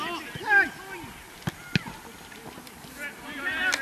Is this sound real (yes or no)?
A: yes